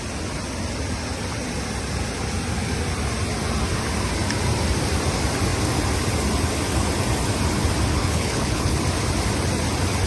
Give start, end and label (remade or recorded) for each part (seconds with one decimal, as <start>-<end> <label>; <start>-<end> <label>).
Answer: 0.0-7.9 recorded; 7.9-8.8 remade; 8.8-10.1 recorded